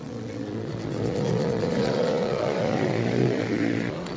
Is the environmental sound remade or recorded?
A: remade